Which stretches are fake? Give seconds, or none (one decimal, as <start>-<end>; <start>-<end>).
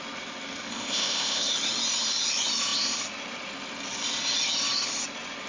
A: 0.7-1.5